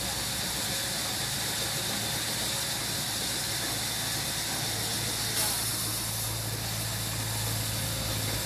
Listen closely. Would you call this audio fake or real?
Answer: real